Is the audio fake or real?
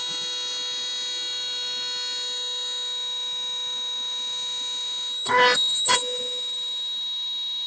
real